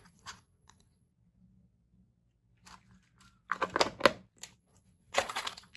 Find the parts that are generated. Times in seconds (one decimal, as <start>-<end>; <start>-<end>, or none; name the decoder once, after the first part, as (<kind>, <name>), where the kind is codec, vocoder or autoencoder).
0.0-1.1 (vocoder, Vocos); 4.6-5.8